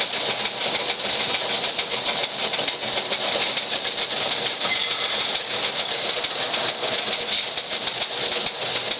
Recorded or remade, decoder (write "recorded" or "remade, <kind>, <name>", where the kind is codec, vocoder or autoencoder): recorded